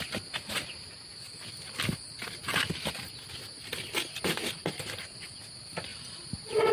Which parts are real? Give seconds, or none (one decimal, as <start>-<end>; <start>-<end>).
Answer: 0.0-6.7